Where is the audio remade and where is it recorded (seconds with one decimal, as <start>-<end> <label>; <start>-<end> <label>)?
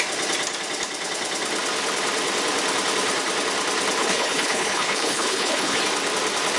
0.0-4.0 recorded; 4.0-5.8 remade; 5.8-6.6 recorded